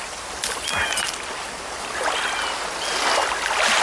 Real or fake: real